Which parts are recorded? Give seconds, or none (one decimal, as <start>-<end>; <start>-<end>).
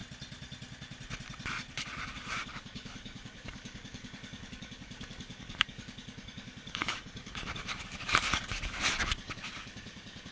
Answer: 0.0-1.8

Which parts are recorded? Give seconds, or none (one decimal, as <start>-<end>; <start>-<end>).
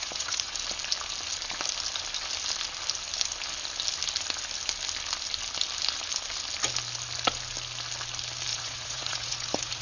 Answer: 0.5-8.5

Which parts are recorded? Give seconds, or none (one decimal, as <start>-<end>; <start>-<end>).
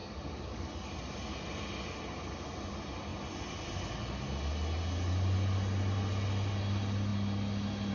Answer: 0.9-7.9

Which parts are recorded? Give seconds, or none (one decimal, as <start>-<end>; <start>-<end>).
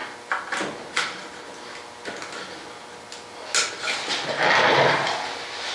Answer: 0.0-5.7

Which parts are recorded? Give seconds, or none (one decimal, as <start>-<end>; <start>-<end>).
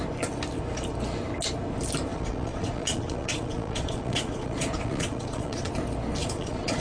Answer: 0.0-2.1; 5.7-6.2